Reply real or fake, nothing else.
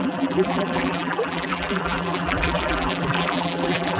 fake